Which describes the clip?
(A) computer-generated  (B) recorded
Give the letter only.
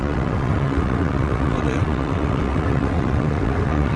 A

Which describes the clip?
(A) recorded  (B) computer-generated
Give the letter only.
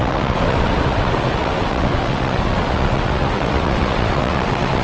B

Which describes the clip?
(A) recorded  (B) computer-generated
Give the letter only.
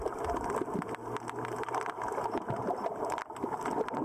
A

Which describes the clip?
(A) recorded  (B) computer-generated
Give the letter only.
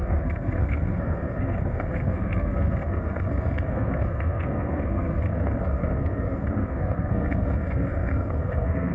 B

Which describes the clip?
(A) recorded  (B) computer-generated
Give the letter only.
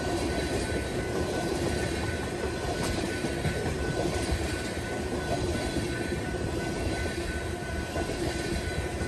B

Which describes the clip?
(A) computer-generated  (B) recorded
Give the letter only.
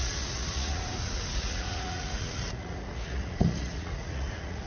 A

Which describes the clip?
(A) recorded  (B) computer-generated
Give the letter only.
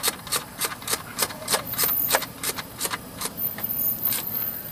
B